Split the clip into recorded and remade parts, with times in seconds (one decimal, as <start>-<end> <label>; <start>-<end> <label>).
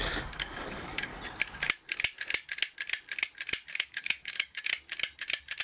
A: 0.0-1.1 remade; 1.1-3.7 recorded; 3.7-4.7 remade; 4.7-5.6 recorded